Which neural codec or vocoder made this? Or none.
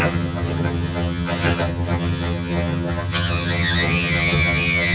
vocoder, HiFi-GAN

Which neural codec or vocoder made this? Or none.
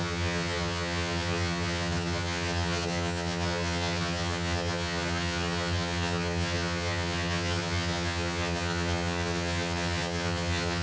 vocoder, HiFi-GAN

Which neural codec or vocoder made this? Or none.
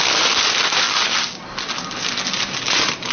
none